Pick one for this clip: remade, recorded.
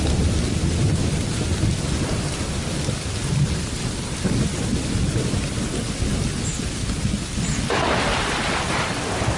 recorded